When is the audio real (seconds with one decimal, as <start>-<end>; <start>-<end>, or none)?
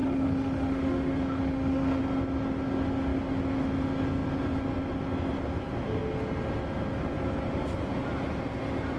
2.0-9.0